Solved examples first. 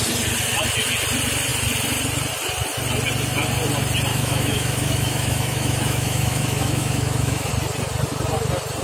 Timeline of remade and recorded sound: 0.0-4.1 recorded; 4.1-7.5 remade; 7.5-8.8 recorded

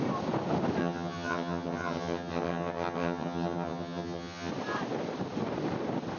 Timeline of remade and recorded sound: 0.0-0.8 recorded; 0.8-4.5 remade; 4.5-6.2 recorded

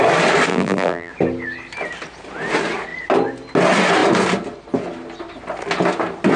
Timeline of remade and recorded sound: 0.0-0.5 recorded; 0.5-1.1 remade; 1.1-6.4 recorded

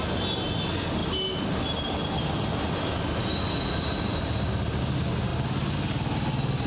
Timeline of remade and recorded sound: 0.0-6.7 recorded

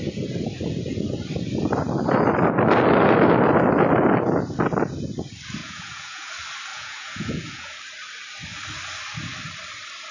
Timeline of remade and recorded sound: 0.0-5.6 recorded; 5.6-6.3 remade; 6.3-6.7 recorded; 6.7-7.8 remade; 7.8-10.1 recorded

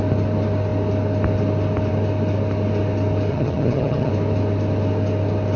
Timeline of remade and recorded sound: 0.0-3.3 recorded; 3.3-4.1 remade; 4.1-5.6 recorded

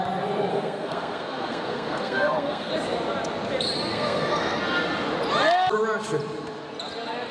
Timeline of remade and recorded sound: 0.0-0.5 recorded; 0.5-2.7 remade; 2.7-3.9 recorded; 3.9-4.6 remade; 4.6-7.3 recorded

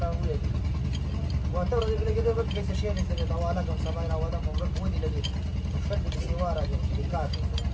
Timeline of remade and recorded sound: 0.0-7.7 recorded